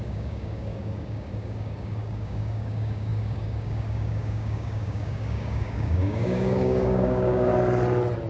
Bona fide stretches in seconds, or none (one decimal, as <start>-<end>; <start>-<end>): 7.5-8.3